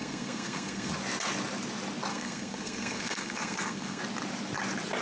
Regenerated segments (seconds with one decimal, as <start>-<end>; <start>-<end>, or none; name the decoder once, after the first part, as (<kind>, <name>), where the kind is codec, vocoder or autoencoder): 0.0-0.9 (codec, SNAC); 2.1-4.0